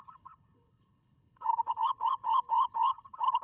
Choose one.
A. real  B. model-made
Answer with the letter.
B